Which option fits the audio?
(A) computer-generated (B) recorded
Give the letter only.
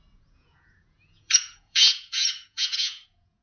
A